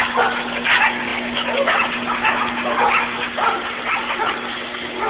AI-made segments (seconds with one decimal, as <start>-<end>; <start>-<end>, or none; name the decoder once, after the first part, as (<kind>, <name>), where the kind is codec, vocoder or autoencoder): none